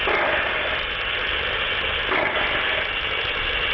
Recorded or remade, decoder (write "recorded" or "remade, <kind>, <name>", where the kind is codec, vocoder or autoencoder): recorded